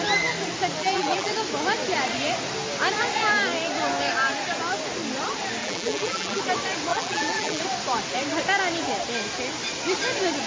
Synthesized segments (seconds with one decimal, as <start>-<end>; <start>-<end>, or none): 0.8-1.3; 5.6-6.4; 6.9-7.6

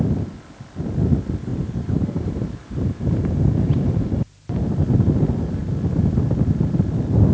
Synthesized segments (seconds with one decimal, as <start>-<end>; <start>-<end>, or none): 1.5-3.9